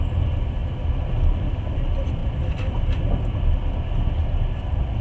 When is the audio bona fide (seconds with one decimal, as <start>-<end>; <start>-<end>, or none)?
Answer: 0.0-2.2; 3.5-5.0